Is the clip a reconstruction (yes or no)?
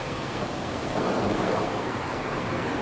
yes